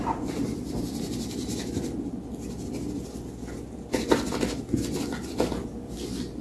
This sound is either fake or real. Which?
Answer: real